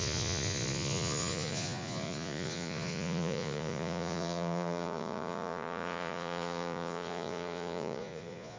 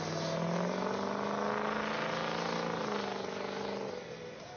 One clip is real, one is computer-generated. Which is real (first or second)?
second